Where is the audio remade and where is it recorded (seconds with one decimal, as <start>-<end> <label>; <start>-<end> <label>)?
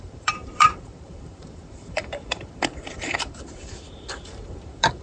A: 0.0-5.0 remade